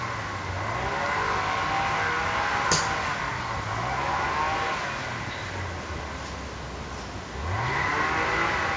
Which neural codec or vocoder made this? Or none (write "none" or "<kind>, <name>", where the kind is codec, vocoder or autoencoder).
none